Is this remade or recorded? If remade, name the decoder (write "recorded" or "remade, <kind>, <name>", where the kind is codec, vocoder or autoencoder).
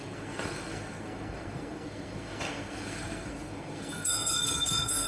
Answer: remade, codec, SNAC